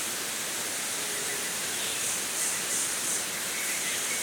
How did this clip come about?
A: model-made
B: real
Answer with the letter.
B